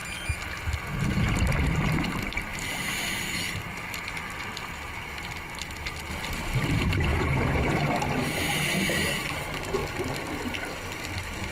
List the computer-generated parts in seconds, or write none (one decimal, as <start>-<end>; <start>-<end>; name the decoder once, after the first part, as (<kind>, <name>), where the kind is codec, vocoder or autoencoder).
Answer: 7.1-7.7 (vocoder, Vocos)